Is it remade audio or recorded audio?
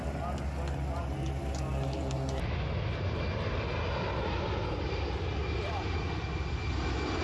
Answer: recorded